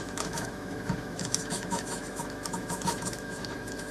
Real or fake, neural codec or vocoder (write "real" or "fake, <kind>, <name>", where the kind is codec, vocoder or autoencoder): fake, autoencoder, DAC-VAE